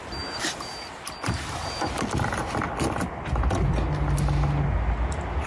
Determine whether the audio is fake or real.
real